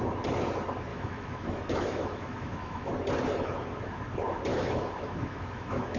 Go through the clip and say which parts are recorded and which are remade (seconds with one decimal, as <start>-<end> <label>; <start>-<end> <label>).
0.0-0.9 recorded; 0.9-2.9 remade; 2.9-4.5 recorded; 4.5-6.0 remade